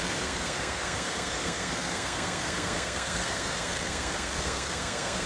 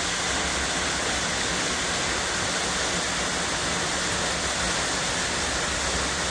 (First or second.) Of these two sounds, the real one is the second